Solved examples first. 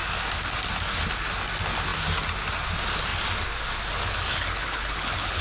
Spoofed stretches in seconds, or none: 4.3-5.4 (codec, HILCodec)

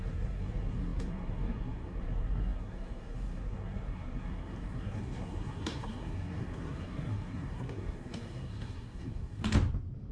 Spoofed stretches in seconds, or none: 0.0-9.4 (codec, SNAC)

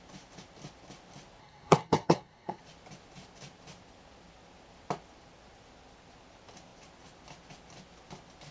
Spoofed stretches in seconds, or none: 1.4-2.6 (codec, SNAC)

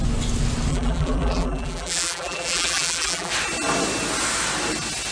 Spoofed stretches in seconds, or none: 0.7-3.3 (vocoder, BigVGAN v2)

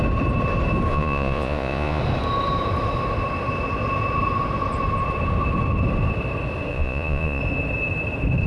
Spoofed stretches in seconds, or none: 0.9-2.0 (vocoder, Vocos); 6.7-7.4